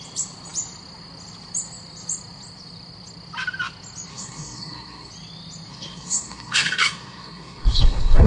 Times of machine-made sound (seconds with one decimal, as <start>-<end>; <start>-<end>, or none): 4.1-5.1; 5.7-8.3